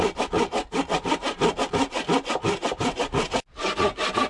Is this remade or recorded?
recorded